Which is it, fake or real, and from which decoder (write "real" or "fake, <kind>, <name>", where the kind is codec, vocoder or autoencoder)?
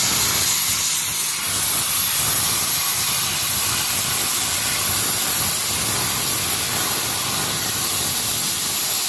real